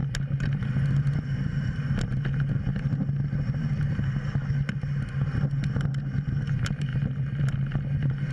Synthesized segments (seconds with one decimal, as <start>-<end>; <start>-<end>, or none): none